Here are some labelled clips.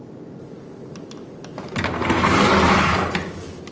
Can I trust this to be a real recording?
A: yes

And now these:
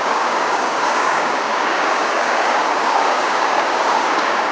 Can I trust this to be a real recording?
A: no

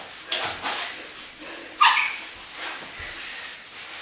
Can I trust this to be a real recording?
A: yes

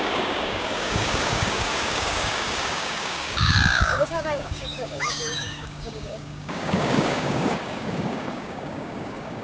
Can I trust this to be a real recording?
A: no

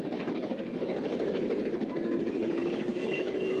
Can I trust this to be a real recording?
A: no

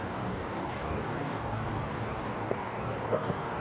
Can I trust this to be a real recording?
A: no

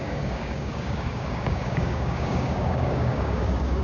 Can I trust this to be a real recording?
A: no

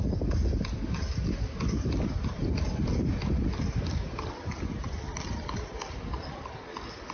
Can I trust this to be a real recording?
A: yes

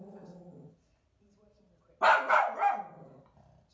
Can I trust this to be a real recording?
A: yes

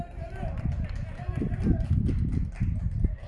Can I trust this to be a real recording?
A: yes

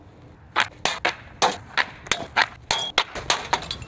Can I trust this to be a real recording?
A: yes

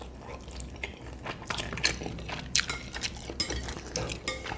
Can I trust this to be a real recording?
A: yes